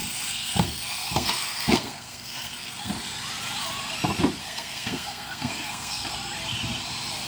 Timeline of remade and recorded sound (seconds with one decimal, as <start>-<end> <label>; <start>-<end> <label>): 0.0-2.9 remade; 2.9-4.4 recorded; 4.4-6.1 remade; 6.1-7.3 recorded